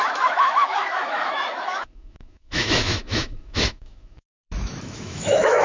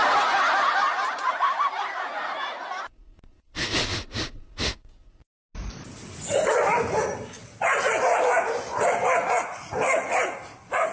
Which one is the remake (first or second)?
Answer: first